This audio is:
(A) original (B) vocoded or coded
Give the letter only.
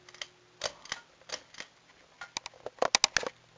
A